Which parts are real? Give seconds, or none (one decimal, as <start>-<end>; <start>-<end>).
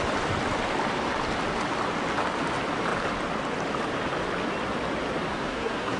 0.0-5.3